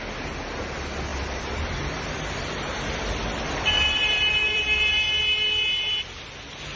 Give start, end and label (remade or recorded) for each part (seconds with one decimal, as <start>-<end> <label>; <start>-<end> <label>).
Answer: 0.0-1.1 recorded; 1.1-5.1 remade; 5.1-6.8 recorded